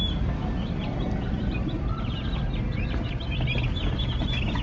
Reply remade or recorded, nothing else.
recorded